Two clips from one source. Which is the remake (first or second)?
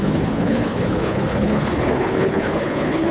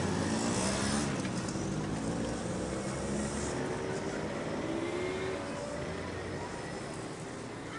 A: first